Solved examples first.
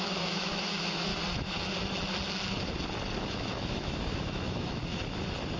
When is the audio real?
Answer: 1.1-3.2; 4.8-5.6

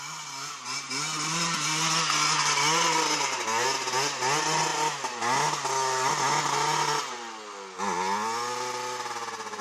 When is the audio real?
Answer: 0.0-9.6

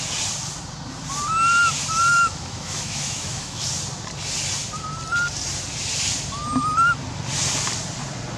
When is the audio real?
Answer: 0.0-2.1; 3.6-8.4

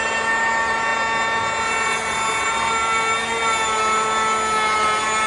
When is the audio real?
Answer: 0.0-5.3

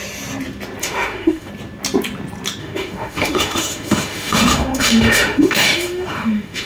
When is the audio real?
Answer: 0.0-0.8; 1.5-2.6

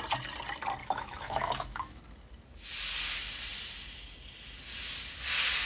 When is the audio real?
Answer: 0.0-0.8; 2.0-5.7